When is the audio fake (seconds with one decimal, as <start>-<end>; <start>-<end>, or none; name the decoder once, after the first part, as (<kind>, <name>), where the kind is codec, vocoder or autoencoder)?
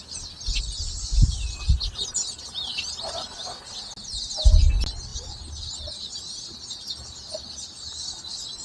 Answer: none